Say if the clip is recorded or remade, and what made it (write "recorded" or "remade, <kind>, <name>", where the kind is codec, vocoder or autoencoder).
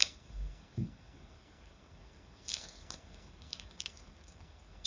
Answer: remade, codec, SNAC